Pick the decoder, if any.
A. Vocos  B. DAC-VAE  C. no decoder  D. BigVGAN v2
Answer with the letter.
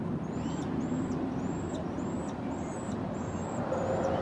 D